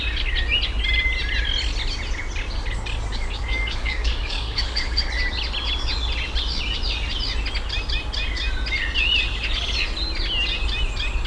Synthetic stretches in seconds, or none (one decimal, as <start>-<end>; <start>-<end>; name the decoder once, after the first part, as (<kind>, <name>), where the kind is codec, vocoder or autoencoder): 3.1-5.0 (codec, DAC)